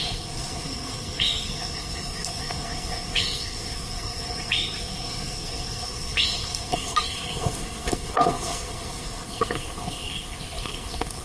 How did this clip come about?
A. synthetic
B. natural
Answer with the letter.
A